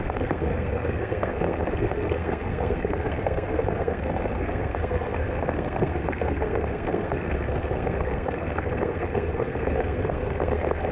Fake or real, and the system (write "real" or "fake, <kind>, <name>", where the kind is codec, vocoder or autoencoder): fake, codec, SNAC